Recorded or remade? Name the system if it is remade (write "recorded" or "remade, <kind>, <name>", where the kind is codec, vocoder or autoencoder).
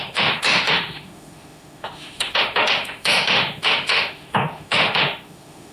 remade, autoencoder, DAC-VAE